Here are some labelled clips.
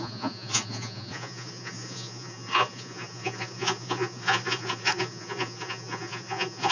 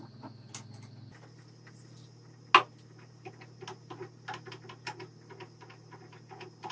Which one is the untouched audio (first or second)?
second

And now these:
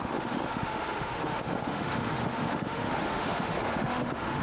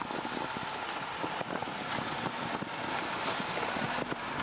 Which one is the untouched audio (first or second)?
second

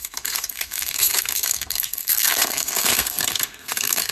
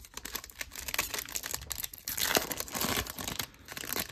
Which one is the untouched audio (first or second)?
second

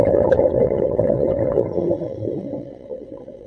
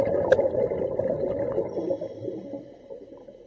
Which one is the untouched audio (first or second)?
second